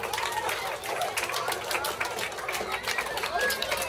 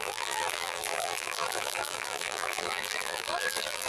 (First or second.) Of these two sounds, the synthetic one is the second